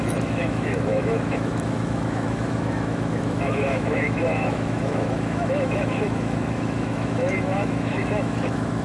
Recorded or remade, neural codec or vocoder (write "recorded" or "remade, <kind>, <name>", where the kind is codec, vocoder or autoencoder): remade, autoencoder, DAC-VAE